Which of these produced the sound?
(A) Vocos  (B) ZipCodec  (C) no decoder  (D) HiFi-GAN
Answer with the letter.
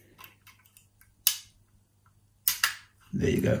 C